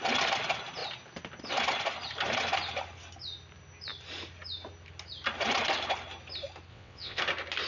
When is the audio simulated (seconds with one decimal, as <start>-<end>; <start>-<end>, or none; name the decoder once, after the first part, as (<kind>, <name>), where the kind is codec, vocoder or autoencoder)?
6.7-7.2 (vocoder, WaveNeXt)